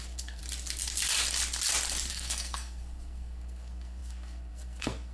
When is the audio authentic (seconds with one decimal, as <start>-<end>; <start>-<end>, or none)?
0.4-2.1